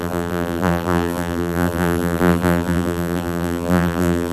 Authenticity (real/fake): fake